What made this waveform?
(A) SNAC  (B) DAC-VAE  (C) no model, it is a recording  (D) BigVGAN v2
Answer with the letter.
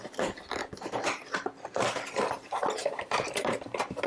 D